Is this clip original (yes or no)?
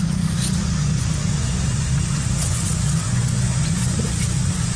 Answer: no